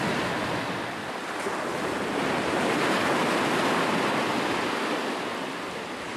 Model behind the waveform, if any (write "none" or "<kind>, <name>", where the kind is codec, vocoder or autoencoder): none